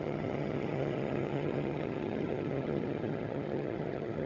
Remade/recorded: remade